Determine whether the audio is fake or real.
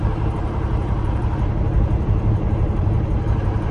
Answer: fake